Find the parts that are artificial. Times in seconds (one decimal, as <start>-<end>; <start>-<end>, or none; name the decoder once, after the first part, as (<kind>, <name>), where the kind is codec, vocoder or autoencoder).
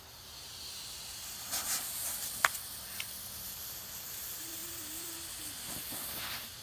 4.6-5.5 (vocoder, BigVGAN v2)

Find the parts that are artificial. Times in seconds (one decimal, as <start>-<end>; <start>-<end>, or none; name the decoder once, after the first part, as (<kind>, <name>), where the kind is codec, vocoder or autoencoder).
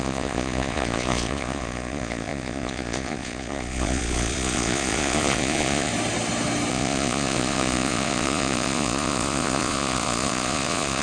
0.0-5.9 (vocoder, Vocos); 6.7-11.0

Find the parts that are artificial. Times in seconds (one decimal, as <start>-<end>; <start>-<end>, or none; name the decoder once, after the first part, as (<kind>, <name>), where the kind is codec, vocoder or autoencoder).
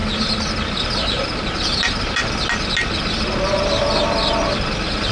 none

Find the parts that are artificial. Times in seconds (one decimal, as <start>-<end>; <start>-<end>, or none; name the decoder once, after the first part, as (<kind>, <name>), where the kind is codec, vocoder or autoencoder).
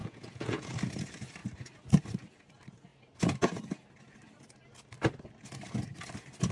0.0-0.7 (vocoder, Vocos)